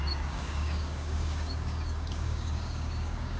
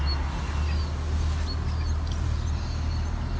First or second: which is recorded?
second